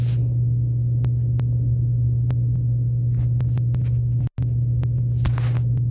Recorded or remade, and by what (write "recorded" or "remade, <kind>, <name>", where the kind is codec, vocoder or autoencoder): recorded